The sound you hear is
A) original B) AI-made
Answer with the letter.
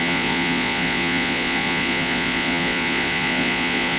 B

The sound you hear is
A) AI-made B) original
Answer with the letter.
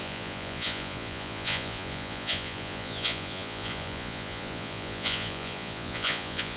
A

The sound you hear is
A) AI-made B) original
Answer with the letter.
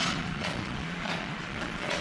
A